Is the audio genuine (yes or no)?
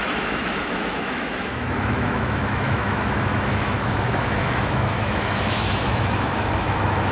no